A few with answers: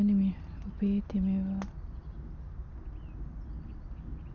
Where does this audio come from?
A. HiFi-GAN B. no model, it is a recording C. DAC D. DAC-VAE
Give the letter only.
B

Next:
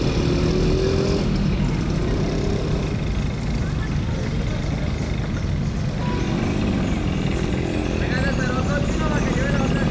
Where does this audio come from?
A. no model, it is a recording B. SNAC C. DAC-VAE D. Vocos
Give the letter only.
A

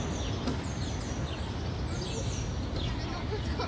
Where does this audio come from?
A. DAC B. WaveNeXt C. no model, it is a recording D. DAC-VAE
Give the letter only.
C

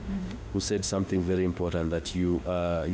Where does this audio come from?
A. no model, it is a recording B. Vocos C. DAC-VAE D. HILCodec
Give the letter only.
C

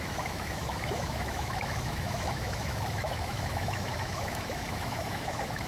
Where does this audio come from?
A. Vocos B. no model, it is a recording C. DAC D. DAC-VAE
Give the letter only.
D